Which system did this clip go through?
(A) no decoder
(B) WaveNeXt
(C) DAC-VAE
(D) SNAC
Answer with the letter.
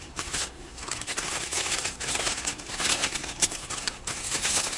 D